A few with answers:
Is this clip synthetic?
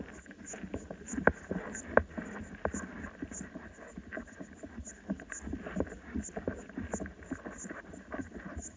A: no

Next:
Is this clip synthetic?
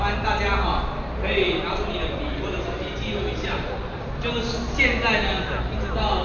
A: no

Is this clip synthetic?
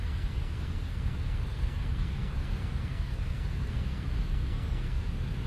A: yes